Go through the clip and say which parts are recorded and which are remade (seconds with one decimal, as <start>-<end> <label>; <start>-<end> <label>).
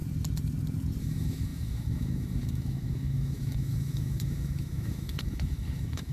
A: 0.0-1.0 recorded; 1.0-6.1 remade